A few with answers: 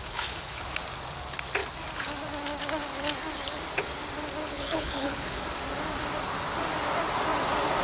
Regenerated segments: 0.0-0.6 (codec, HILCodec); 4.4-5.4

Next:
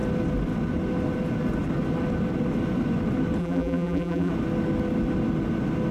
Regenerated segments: 3.4-4.3 (vocoder, BigVGAN v2)

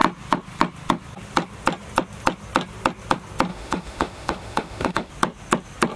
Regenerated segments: 3.5-5.1 (autoencoder, DAC-VAE)

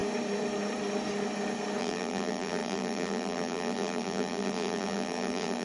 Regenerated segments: 1.8-5.6 (vocoder, BigVGAN v2)

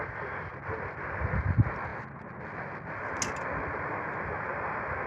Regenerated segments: none